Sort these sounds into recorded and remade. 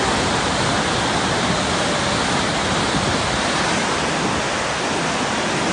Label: recorded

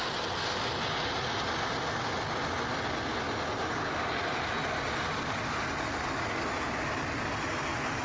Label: recorded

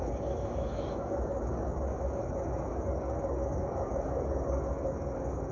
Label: remade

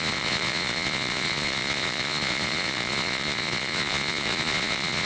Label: remade